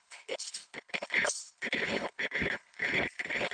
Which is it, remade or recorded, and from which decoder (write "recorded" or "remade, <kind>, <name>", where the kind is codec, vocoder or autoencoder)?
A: remade, codec, HILCodec